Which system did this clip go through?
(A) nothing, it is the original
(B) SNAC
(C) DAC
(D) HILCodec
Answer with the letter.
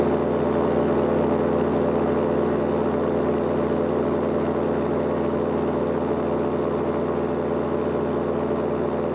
A